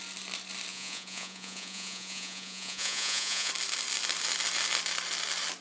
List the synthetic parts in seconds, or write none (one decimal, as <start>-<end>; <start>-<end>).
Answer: 0.7-3.5

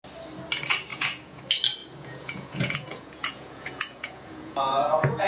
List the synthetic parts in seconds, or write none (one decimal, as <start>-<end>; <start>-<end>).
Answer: 0.9-1.4; 1.8-5.3

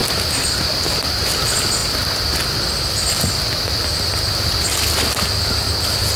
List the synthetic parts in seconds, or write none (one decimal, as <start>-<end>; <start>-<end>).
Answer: none

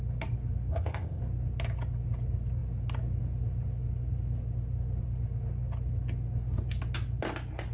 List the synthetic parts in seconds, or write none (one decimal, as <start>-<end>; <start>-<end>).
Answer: 0.7-1.2

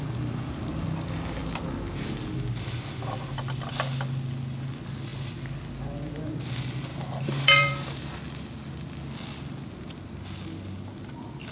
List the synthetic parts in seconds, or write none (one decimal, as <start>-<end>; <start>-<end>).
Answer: 6.9-8.2